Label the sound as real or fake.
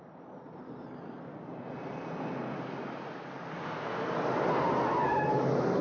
real